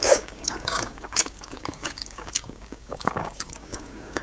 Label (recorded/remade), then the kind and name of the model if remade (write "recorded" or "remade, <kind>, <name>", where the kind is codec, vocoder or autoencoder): remade, codec, DAC